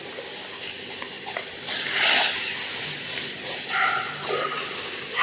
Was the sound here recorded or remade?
recorded